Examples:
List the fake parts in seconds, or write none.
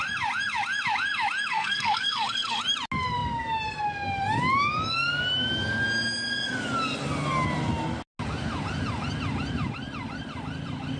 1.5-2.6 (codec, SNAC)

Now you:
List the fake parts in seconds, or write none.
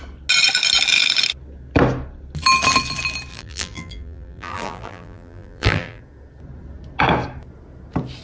3.3-6.0 (vocoder, BigVGAN v2)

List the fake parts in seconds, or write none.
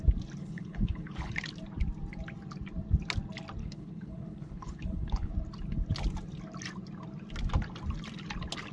0.4-1.3 (codec, HILCodec); 3.6-5.3